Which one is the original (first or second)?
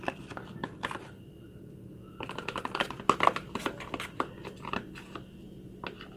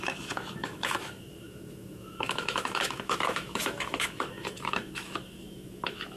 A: first